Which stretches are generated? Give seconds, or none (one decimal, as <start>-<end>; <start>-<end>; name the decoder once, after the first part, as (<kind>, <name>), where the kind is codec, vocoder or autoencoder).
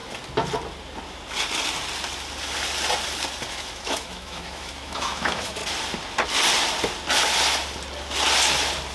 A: 3.5-5.6 (autoencoder, DAC-VAE)